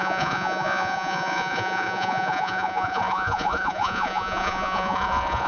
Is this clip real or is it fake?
fake